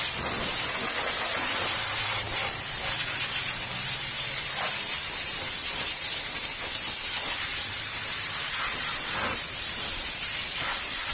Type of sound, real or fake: fake